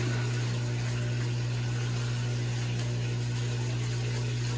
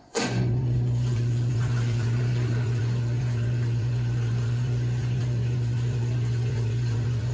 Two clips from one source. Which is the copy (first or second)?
second